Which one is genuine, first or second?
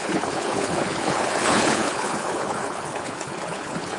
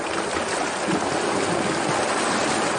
second